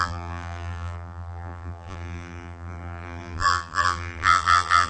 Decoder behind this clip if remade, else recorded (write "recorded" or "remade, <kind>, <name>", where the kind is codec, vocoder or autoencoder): remade, vocoder, BigVGAN v2